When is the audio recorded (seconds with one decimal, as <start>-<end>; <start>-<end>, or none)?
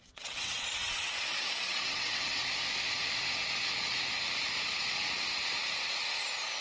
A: 2.4-6.6